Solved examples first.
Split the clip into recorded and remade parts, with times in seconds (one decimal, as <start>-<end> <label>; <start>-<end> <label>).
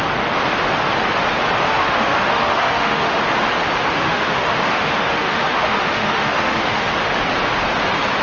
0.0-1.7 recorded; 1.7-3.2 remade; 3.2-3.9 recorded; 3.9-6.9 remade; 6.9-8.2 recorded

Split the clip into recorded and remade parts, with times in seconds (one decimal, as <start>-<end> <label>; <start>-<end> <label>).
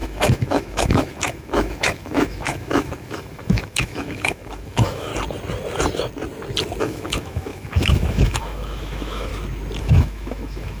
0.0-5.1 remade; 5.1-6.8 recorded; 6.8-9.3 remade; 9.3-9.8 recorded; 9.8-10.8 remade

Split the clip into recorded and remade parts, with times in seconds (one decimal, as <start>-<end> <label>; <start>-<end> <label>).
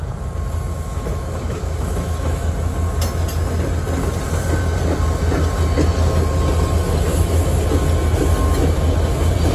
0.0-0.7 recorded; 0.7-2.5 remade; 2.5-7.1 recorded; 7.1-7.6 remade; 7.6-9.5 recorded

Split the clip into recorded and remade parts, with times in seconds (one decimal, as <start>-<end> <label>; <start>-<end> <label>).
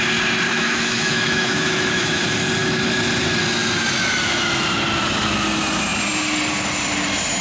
0.0-0.5 recorded; 0.5-2.2 remade; 2.2-7.4 recorded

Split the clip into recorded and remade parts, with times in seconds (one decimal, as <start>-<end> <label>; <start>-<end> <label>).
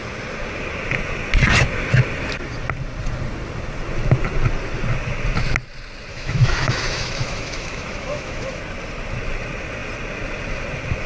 0.0-6.1 recorded; 6.1-8.6 remade; 8.6-11.1 recorded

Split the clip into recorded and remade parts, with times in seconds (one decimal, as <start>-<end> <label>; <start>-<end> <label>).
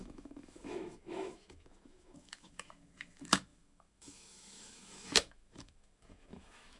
0.0-6.8 remade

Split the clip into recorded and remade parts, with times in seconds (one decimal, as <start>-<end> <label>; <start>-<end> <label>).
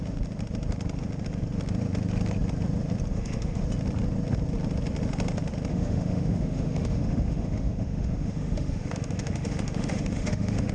0.0-3.1 recorded; 3.1-3.6 remade; 3.6-5.7 recorded; 5.7-10.7 remade